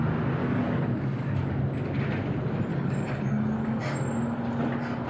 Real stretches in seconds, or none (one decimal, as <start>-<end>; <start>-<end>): 0.0-0.4; 1.6-2.7; 3.8-5.1